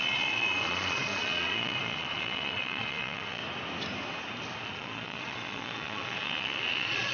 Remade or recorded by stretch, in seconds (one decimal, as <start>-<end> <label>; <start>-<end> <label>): 0.0-3.4 remade; 3.4-4.6 recorded; 4.6-7.1 remade